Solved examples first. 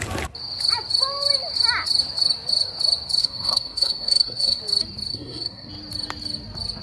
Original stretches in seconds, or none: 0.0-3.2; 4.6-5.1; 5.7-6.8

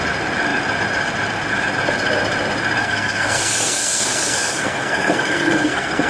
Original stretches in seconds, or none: 0.0-2.8

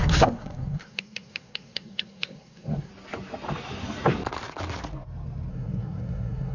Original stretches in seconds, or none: 2.9-5.5